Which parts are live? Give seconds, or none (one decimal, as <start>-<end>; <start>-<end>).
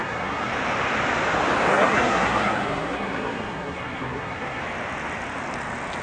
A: 0.5-1.7; 4.6-6.0